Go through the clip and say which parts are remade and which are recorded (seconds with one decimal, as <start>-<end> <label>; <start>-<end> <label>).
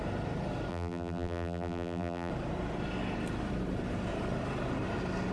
0.0-0.7 recorded; 0.7-2.3 remade; 2.3-5.3 recorded